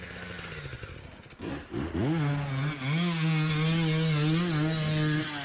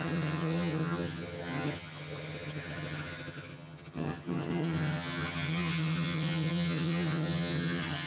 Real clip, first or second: first